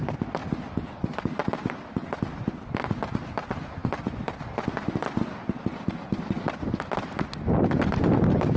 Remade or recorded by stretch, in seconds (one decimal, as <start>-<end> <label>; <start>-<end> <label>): 0.0-8.6 recorded

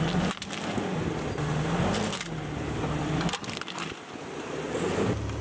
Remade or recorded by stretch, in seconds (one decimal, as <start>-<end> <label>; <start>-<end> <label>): 0.0-5.4 recorded

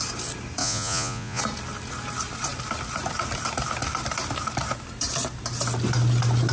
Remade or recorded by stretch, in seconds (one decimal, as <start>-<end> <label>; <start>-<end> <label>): 0.0-0.6 recorded; 0.6-1.4 remade; 1.4-6.5 recorded

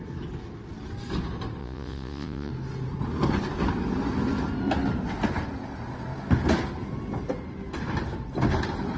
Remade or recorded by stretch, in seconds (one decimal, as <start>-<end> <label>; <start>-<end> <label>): 0.0-1.6 recorded; 1.6-2.5 remade; 2.5-9.0 recorded

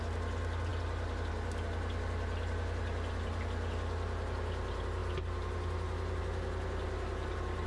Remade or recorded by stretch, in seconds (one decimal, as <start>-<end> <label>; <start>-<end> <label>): 0.0-7.7 recorded